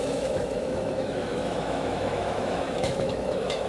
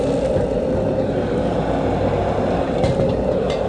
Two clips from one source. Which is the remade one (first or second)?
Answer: first